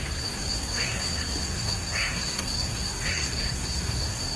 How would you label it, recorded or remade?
remade